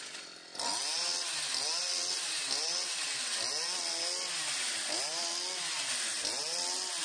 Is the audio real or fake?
real